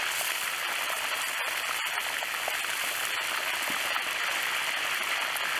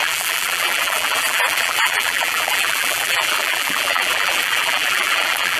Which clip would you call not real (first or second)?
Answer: second